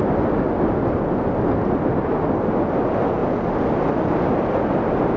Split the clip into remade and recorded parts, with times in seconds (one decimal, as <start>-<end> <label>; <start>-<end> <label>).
0.0-5.2 recorded